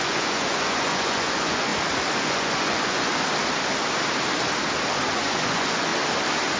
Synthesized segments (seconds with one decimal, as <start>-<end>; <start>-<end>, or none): 0.0-1.7; 2.2-3.1; 5.1-5.9